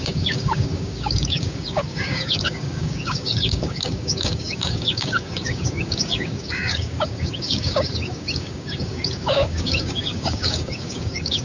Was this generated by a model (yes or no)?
yes